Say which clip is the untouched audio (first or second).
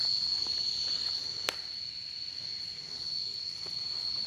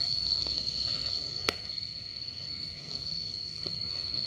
first